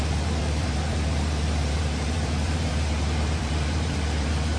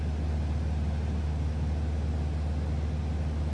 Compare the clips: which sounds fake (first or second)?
first